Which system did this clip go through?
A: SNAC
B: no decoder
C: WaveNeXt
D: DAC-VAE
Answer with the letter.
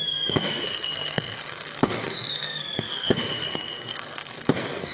A